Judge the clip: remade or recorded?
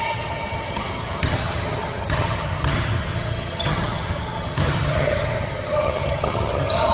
remade